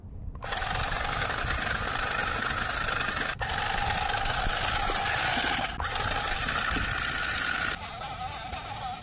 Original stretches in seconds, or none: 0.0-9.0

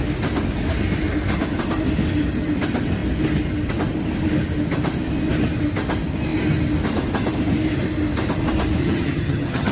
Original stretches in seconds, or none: 0.0-8.8